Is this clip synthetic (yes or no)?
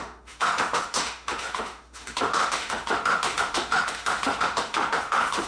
yes